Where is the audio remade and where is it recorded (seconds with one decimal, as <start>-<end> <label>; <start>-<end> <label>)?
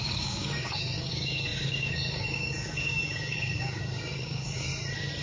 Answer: 0.0-4.7 remade; 4.7-5.2 recorded